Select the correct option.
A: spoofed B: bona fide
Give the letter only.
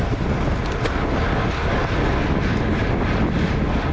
B